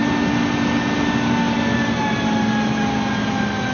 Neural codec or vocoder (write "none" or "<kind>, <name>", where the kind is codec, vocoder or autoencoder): none